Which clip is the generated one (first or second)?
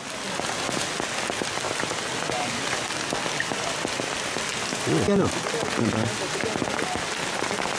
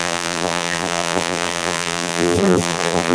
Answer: second